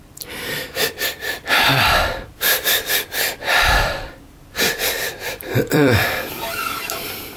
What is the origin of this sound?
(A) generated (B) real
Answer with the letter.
A